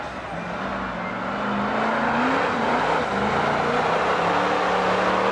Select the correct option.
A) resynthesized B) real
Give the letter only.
B